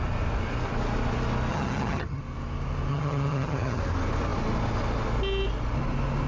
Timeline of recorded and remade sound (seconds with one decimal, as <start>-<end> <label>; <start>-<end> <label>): 0.0-1.5 recorded; 1.5-2.2 remade; 2.2-2.9 recorded; 2.9-3.8 remade; 3.8-6.3 recorded